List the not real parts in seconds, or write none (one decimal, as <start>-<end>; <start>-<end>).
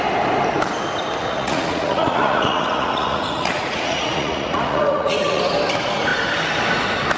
1.2-5.4